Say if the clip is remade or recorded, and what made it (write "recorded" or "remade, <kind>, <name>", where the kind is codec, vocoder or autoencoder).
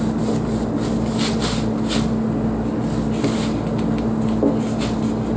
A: recorded